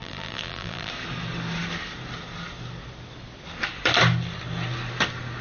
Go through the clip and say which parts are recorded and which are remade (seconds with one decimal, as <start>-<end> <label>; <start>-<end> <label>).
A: 0.0-0.9 remade; 0.9-5.4 recorded